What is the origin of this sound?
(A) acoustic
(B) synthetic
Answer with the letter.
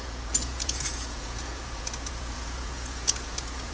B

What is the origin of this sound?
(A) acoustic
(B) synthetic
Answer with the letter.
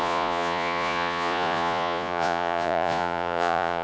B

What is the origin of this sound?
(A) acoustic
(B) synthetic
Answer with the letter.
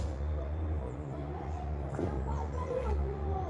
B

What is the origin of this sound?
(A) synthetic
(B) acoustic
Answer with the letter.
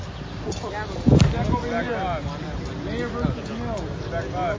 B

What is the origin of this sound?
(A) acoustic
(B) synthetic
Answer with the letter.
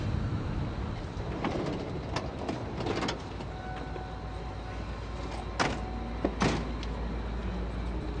A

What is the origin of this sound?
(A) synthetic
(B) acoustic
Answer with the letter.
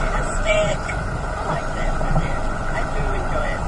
A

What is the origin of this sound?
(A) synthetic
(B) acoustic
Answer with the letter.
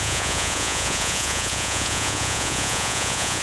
A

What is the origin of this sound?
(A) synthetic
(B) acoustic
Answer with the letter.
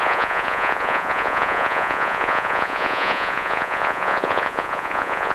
A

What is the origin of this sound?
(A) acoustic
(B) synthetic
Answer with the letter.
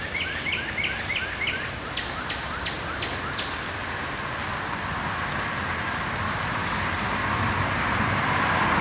A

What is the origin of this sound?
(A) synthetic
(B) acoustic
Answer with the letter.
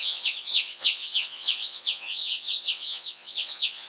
A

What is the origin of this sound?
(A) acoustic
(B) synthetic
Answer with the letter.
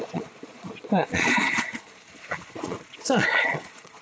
B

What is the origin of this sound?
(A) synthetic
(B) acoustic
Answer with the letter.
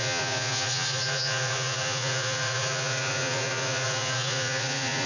A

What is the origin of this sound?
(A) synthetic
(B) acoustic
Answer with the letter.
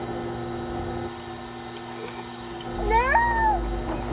B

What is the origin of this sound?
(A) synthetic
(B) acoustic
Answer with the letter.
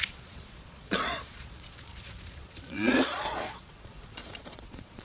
A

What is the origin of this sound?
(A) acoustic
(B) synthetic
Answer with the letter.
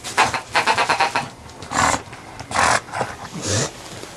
A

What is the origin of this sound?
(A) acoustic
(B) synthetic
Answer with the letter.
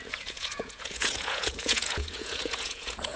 B